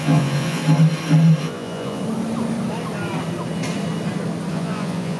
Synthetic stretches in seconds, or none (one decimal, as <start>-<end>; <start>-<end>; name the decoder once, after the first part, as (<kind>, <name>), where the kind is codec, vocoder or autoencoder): 0.0-0.6 (vocoder, Vocos); 1.4-2.0; 4.5-5.2